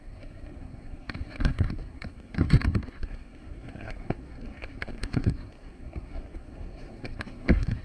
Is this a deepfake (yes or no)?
yes